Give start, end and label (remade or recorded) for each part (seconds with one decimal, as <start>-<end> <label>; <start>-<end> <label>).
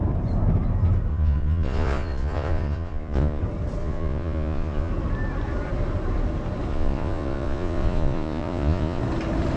0.0-1.1 recorded; 1.1-3.4 remade; 3.4-3.8 recorded; 3.8-4.9 remade; 4.9-6.7 recorded; 6.7-9.0 remade; 9.0-9.6 recorded